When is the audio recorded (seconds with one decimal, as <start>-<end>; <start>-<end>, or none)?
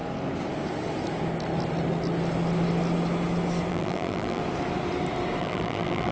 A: 0.0-3.7; 4.4-5.4